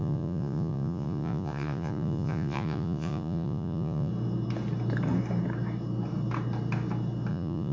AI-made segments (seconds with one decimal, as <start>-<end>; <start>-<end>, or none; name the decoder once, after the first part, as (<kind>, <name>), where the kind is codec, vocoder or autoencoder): 0.0-4.1 (vocoder, Vocos); 7.3-7.7